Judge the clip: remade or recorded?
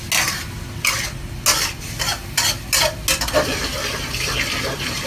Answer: recorded